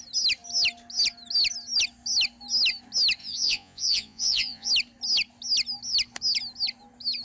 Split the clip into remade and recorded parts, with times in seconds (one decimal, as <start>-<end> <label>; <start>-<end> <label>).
0.0-3.2 recorded; 3.2-4.7 remade; 4.7-7.2 recorded